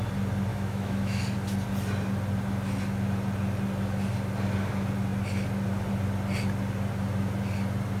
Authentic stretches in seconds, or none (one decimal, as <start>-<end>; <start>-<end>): 0.0-0.5; 1.2-8.0